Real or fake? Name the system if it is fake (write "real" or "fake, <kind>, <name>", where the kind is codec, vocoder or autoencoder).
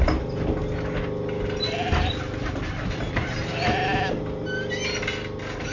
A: real